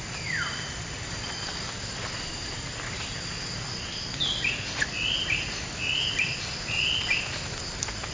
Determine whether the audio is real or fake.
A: real